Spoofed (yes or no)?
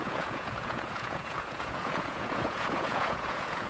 yes